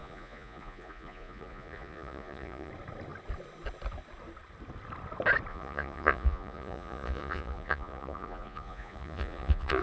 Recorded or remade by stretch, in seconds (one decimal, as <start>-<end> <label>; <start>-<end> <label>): 0.0-2.7 remade; 2.7-5.5 recorded; 5.5-9.8 remade